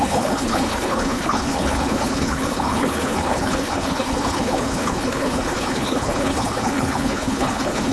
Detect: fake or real fake